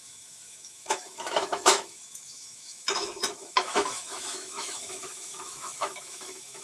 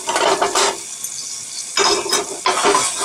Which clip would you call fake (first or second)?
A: first